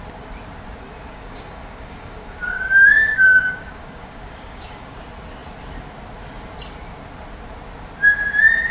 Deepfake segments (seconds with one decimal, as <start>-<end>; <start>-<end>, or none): 1.1-5.0

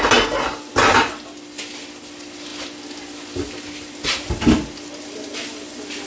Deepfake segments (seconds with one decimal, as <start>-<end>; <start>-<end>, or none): none

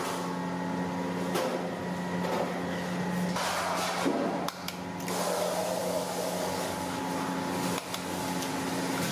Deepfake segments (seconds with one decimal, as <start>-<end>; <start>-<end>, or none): 5.8-7.0

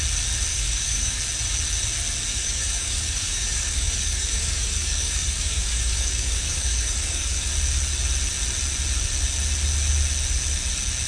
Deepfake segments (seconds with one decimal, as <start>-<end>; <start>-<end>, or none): 0.5-1.2; 2.3-7.5

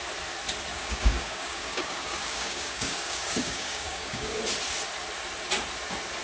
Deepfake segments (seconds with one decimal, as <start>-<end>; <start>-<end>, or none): 0.7-4.4

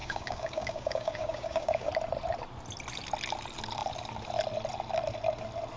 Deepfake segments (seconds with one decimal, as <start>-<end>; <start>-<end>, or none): 0.0-1.9

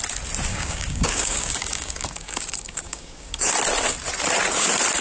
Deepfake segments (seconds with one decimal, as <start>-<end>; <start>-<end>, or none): 0.5-3.5

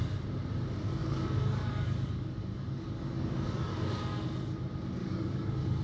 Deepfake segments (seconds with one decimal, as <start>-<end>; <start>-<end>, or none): 1.0-4.2; 5.0-5.8